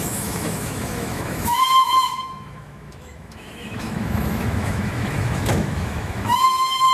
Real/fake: fake